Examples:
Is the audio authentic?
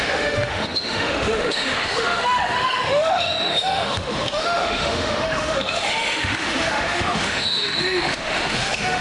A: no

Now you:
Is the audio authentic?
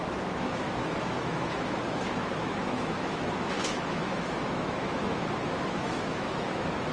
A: no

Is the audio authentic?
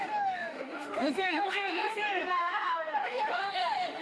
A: no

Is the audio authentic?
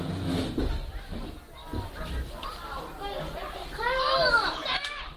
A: yes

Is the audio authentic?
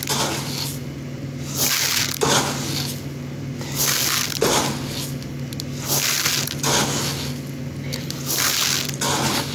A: yes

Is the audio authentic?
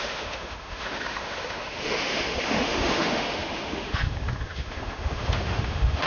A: no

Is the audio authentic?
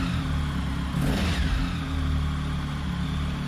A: yes